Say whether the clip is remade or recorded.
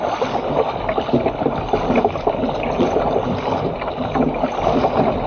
remade